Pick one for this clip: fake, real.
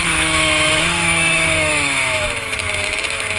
fake